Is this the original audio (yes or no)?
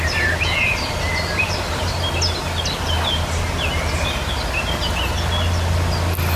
yes